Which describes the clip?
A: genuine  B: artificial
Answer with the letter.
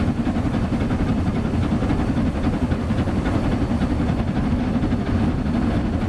A